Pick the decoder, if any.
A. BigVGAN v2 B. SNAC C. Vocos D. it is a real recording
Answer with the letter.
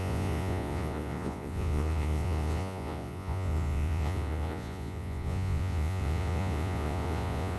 C